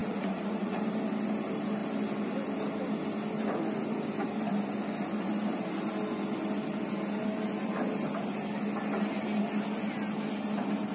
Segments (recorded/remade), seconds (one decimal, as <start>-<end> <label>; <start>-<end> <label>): 0.0-0.8 remade; 0.8-10.9 recorded